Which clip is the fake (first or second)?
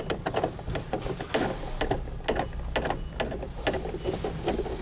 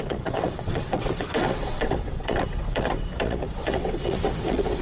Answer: second